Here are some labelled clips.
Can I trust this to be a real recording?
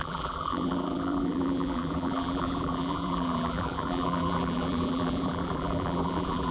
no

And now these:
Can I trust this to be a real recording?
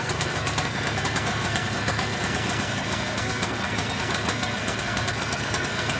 no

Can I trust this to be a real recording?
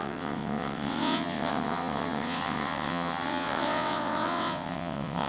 no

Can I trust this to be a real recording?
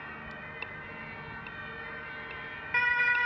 yes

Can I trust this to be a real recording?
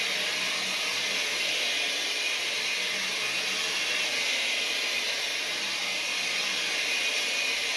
yes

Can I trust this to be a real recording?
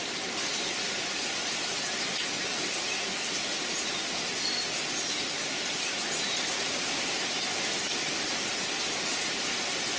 yes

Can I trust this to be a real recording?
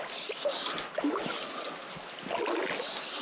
yes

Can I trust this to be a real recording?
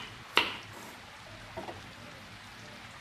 yes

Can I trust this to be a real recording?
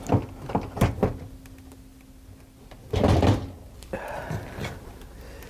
yes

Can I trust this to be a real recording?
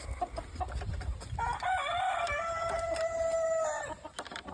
yes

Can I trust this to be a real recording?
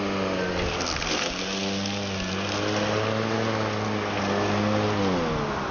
yes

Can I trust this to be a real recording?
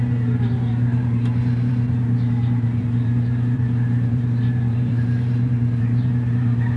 no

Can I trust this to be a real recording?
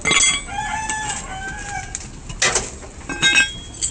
yes